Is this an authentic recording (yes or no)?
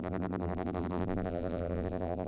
no